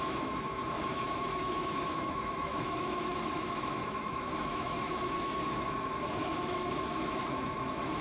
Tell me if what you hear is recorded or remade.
remade